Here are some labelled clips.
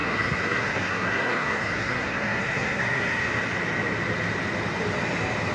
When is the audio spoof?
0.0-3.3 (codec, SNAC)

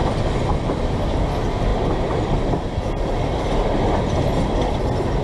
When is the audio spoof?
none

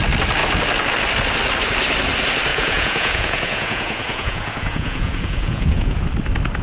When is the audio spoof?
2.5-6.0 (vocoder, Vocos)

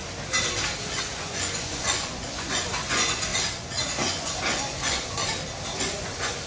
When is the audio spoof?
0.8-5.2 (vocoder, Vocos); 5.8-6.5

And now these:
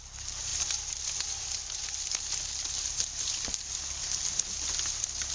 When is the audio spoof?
none

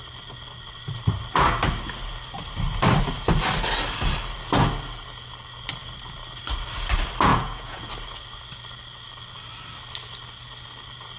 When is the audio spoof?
7.3-7.8 (vocoder, Vocos)

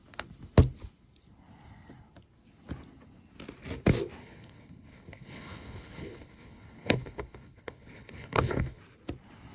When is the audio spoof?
4.2-8.8 (codec, HILCodec)

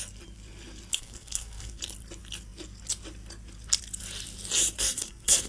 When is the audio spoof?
0.9-1.8 (codec, SNAC); 4.9-5.5